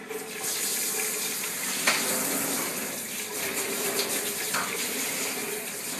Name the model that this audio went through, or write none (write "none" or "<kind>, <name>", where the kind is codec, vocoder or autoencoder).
none